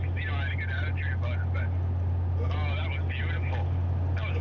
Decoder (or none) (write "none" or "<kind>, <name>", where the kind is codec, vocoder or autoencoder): none